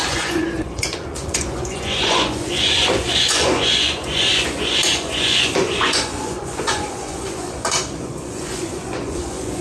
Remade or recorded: remade